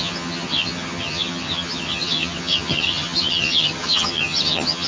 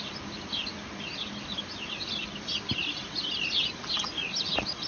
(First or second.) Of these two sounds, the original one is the second